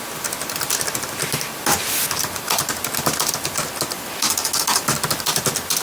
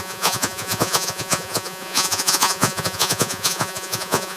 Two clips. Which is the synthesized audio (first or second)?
second